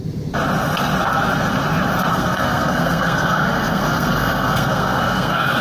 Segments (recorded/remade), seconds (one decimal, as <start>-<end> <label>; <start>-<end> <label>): 0.0-2.1 recorded; 2.1-5.6 remade